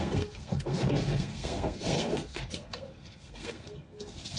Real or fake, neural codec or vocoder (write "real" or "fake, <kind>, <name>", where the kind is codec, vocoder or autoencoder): fake, codec, SNAC